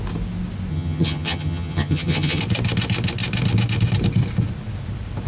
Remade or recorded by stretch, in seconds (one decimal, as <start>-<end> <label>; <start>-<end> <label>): 0.0-0.7 recorded; 0.7-2.4 remade; 2.4-5.3 recorded